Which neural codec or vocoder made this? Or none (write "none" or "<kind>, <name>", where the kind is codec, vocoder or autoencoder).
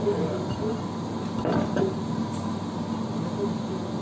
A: none